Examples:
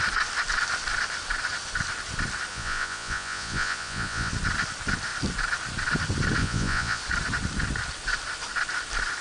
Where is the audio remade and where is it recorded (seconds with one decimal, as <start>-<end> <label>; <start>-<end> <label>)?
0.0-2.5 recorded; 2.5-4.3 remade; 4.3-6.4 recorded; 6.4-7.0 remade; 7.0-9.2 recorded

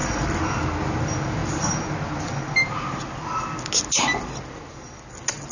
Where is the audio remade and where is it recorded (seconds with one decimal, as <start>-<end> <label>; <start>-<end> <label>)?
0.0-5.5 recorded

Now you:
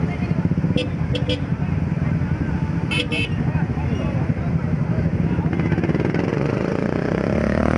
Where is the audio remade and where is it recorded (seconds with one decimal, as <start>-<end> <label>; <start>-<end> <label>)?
0.0-6.3 recorded; 6.3-7.8 remade

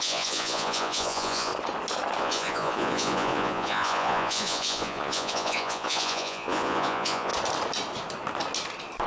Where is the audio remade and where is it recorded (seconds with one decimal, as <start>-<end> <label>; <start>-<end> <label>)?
0.0-1.5 remade; 1.5-2.2 recorded; 2.2-7.3 remade; 7.3-9.1 recorded

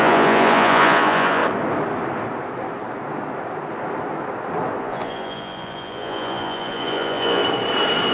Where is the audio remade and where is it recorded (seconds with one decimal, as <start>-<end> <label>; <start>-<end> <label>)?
0.0-1.4 remade; 1.4-4.8 recorded; 4.8-7.4 remade; 7.4-8.1 recorded

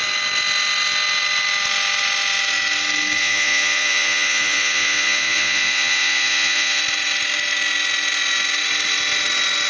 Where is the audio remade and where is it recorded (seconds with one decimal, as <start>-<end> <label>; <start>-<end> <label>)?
0.0-3.2 recorded; 3.2-6.8 remade; 6.8-9.7 recorded

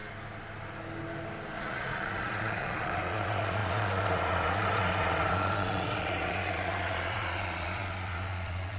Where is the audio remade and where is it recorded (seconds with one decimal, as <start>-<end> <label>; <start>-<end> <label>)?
0.0-1.6 recorded; 1.6-8.8 remade

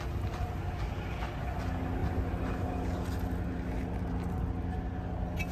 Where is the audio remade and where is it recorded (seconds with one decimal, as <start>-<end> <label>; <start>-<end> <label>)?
0.0-5.5 recorded